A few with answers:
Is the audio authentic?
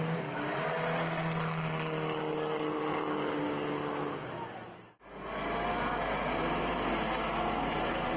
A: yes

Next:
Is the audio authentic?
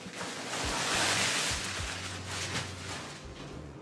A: no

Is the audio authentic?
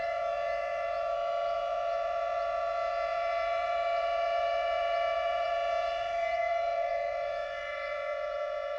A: no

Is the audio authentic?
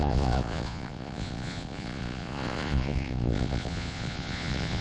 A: no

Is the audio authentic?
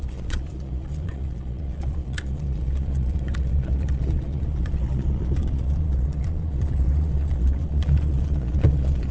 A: no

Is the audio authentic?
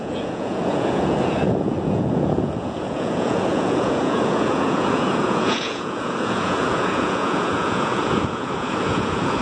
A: no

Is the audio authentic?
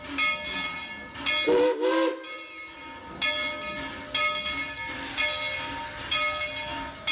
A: yes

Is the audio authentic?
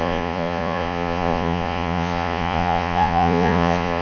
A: no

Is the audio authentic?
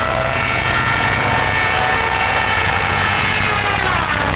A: no